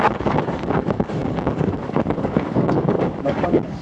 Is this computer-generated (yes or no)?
yes